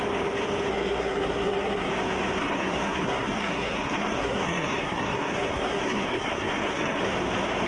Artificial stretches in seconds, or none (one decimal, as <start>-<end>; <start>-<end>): 0.7-1.9; 2.4-7.0